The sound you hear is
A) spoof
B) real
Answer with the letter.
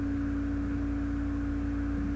B